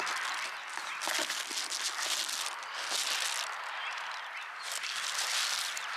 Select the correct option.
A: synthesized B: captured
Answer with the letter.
B